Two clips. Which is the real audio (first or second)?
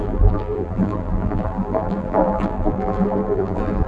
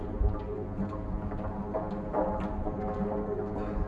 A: second